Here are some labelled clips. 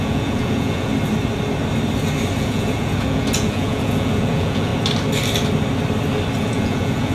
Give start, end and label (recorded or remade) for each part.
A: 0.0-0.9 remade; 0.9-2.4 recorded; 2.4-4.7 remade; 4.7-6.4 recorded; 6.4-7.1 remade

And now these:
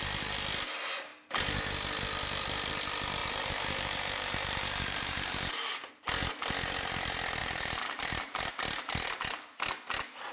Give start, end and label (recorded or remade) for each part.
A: 0.0-3.2 recorded; 3.2-5.9 remade; 5.9-7.4 recorded; 7.4-8.4 remade; 8.4-10.3 recorded

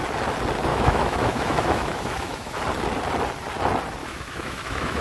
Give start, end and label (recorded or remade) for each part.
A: 0.0-0.7 recorded; 0.7-2.6 remade; 2.6-4.0 recorded; 4.0-5.0 remade